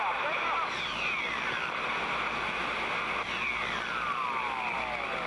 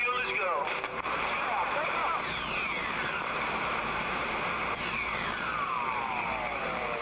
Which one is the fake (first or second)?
second